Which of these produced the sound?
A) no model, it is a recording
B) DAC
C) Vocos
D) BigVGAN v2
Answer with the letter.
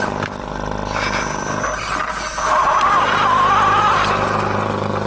A